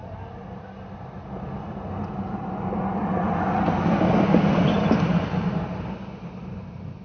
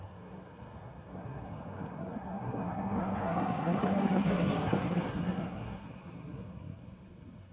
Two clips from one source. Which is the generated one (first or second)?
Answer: second